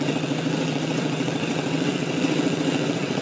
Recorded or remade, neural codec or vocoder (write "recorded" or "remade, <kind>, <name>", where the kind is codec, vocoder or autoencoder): remade, vocoder, WaveNeXt